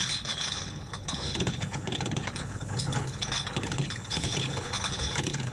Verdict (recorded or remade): remade